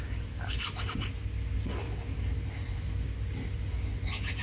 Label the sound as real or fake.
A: real